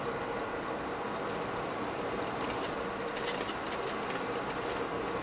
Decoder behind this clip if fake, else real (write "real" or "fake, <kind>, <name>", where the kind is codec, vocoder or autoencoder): real